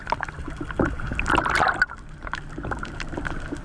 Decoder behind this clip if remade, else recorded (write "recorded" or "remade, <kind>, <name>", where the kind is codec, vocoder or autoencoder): recorded